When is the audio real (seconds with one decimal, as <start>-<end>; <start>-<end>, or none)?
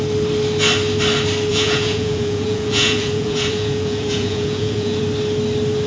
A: 0.0-1.5; 5.0-5.9